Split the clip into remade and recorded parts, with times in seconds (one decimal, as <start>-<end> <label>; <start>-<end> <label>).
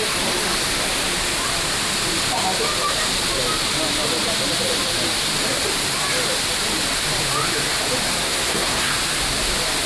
0.0-8.2 recorded; 8.2-8.9 remade; 8.9-9.9 recorded